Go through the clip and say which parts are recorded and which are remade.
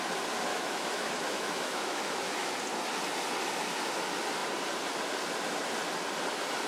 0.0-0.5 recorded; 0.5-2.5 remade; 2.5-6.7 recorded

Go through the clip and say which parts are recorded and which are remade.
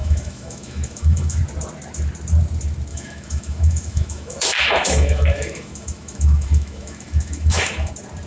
0.0-1.4 remade; 1.4-2.9 recorded; 2.9-7.9 remade; 7.9-8.3 recorded